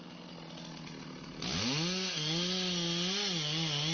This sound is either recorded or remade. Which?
recorded